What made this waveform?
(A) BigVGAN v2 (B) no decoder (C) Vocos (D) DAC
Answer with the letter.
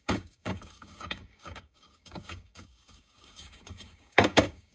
D